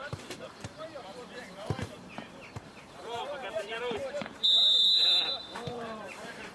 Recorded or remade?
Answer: remade